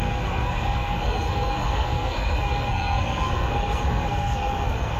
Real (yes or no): no